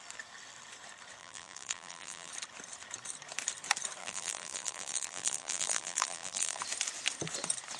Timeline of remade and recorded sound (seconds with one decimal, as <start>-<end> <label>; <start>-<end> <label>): 0.0-1.2 recorded; 1.2-2.3 remade; 2.3-4.0 recorded; 4.0-6.6 remade; 6.6-7.8 recorded